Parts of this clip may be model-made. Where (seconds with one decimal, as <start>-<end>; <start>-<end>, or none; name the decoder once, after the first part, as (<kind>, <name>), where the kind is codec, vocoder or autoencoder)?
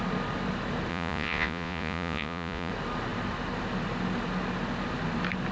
0.9-2.7 (vocoder, Vocos)